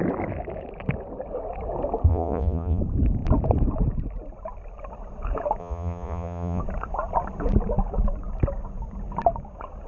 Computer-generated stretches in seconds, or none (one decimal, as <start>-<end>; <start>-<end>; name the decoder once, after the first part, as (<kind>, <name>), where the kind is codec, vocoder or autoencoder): 2.1-2.8 (vocoder, Vocos); 5.6-6.6